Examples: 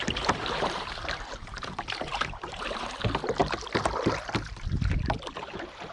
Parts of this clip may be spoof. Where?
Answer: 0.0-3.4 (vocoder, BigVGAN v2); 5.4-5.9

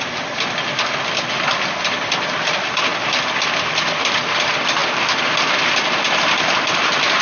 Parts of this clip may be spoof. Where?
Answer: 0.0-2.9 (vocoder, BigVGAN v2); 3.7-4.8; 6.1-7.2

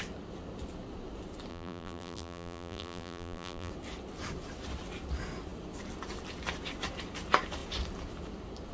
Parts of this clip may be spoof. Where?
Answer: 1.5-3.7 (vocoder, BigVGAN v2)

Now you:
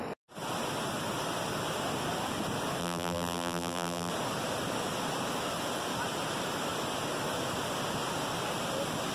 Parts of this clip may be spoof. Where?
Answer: 2.8-4.1 (vocoder, BigVGAN v2)